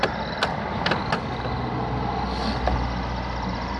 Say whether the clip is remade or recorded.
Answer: recorded